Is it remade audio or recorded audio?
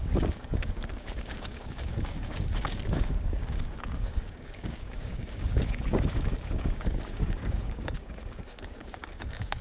remade